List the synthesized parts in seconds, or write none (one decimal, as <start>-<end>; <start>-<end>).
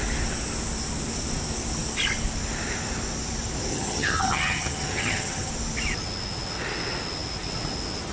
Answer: 3.7-5.5